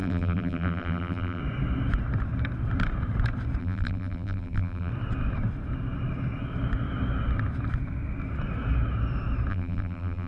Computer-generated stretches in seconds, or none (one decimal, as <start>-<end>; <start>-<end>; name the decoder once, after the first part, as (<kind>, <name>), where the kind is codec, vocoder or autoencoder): 0.0-1.4 (vocoder, BigVGAN v2); 3.6-4.9; 9.5-10.3